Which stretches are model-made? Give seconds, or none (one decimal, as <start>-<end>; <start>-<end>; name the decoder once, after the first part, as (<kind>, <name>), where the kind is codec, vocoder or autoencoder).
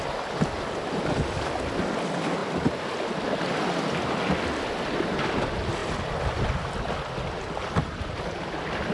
0.0-1.1 (vocoder, BigVGAN v2)